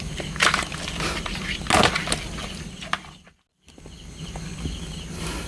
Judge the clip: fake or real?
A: real